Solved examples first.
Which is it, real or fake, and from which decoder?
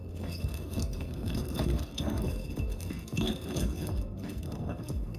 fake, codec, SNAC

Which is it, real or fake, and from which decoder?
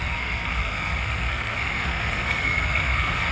fake, codec, SNAC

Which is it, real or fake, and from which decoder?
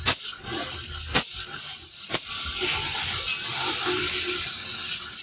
real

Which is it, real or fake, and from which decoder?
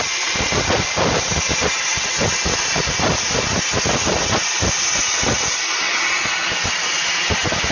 real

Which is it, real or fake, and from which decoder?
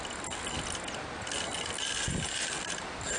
real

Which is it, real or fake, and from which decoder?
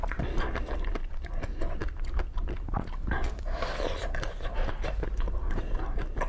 real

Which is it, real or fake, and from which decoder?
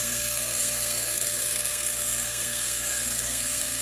fake, codec, SNAC